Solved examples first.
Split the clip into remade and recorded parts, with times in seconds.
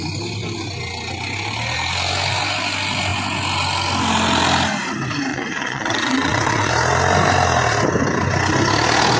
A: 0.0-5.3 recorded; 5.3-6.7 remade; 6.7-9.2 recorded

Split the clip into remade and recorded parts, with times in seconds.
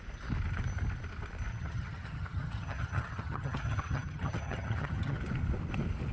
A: 0.0-1.5 recorded; 1.5-5.2 remade; 5.2-6.1 recorded